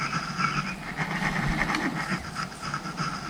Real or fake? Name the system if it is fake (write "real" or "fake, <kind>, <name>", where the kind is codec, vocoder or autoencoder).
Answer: real